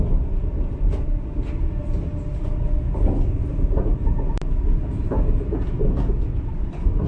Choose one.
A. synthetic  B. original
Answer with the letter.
B